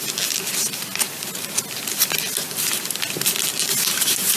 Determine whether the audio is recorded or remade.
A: recorded